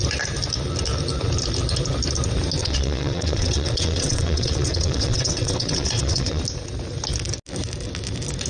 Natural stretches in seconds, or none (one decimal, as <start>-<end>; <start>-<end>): 0.0-2.6; 6.4-8.5